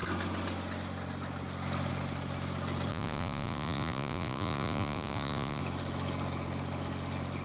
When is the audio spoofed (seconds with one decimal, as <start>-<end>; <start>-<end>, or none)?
2.9-5.6